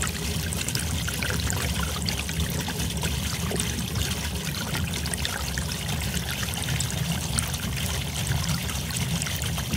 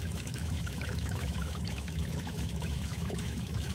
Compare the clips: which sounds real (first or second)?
first